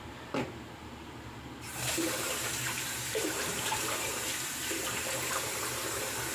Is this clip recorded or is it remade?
remade